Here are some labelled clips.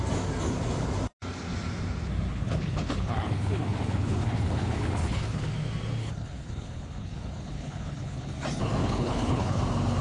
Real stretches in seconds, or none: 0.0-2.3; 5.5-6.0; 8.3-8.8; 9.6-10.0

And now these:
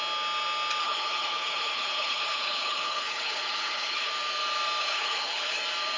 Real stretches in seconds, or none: 0.0-0.8; 4.1-4.8; 5.6-6.0

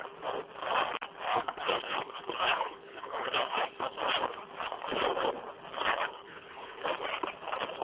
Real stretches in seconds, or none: 0.0-1.3; 4.0-5.9; 6.8-7.8

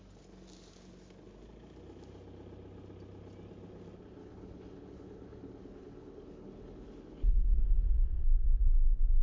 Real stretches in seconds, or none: 0.0-4.2; 7.6-9.2